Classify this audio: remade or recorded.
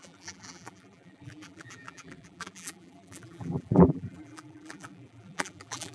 remade